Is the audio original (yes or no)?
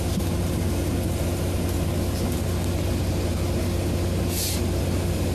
yes